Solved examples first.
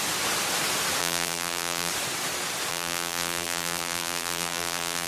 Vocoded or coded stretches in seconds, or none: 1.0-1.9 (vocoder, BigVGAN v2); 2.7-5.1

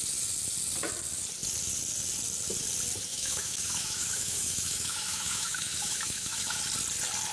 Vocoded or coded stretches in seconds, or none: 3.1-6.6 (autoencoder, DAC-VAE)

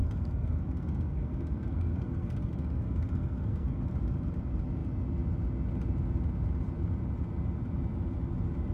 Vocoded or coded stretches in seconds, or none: 0.0-3.8 (codec, SNAC)

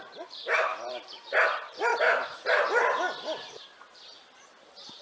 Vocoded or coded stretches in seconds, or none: 0.0-1.9 (vocoder, BigVGAN v2)

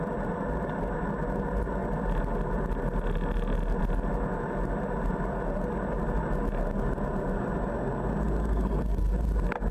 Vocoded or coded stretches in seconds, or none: 8.4-9.1 (codec, SNAC)

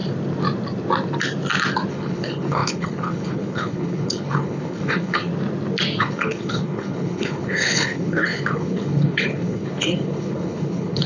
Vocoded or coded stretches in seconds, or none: 1.9-5.3 (codec, HILCodec); 6.0-11.1